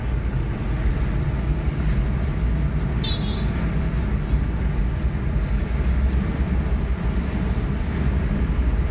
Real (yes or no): yes